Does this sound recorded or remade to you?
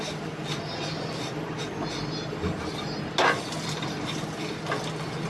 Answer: recorded